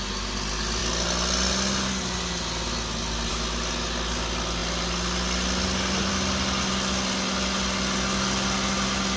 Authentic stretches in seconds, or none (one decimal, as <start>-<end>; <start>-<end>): 0.0-9.2